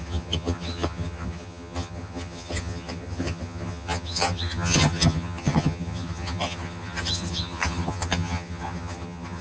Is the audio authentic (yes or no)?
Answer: no